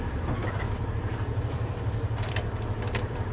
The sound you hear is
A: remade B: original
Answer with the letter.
A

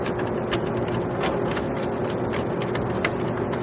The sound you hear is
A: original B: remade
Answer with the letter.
A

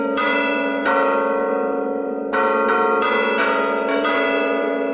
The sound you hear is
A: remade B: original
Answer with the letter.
A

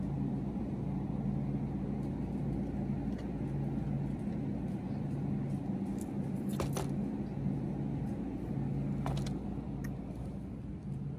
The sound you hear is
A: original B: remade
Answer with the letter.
A